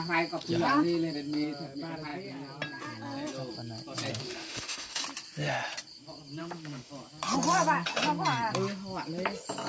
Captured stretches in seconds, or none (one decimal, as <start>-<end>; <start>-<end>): 0.0-4.1; 5.0-6.4; 6.9-9.7